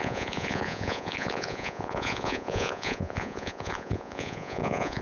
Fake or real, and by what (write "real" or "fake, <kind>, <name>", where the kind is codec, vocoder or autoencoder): fake, vocoder, Vocos